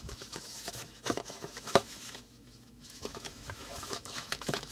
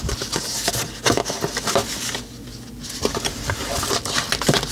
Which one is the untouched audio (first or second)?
second